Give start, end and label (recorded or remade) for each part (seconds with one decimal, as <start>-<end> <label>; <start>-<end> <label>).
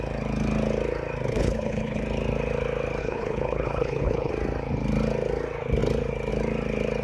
0.0-1.3 recorded; 1.3-2.0 remade; 2.0-3.0 recorded; 3.0-4.3 remade; 4.3-7.0 recorded